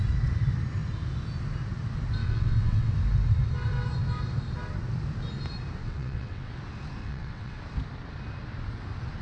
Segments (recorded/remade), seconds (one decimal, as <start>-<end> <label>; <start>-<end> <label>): 0.0-2.2 recorded; 2.2-2.9 remade; 2.9-5.8 recorded; 5.8-6.5 remade; 6.5-7.0 recorded; 7.0-7.6 remade; 7.6-9.2 recorded